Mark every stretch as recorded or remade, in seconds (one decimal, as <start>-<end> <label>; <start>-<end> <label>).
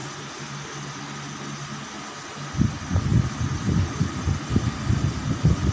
0.0-5.7 recorded